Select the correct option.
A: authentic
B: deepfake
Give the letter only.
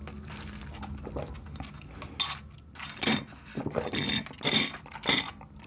A